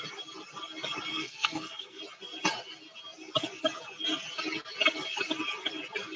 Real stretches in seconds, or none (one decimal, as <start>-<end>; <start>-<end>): 0.0-1.1; 2.0-6.2